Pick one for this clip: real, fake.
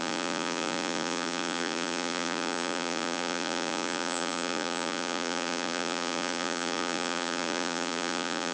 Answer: fake